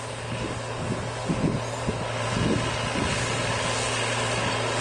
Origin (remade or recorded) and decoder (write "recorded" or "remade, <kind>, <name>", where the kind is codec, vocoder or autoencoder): recorded